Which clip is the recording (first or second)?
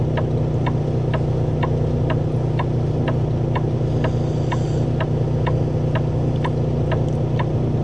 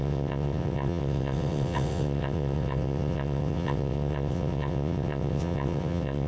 first